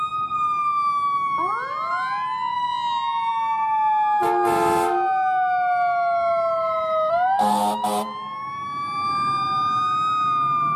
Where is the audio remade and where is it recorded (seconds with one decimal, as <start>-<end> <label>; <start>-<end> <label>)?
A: 0.0-10.8 recorded